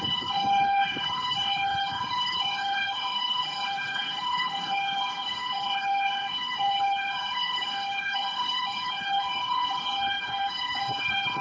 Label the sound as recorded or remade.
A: remade